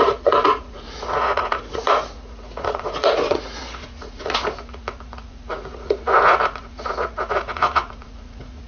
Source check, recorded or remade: remade